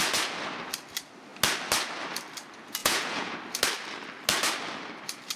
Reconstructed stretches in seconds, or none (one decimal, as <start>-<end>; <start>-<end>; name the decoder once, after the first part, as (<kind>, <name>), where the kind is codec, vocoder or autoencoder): 2.8-3.4 (vocoder, Vocos)